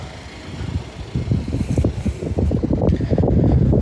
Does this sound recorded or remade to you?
recorded